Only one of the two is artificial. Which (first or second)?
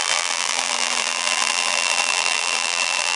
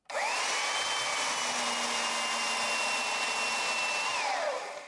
first